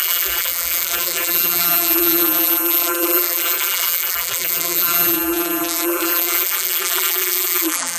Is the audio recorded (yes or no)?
no